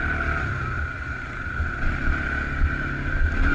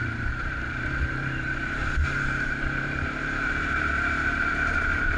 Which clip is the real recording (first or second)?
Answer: first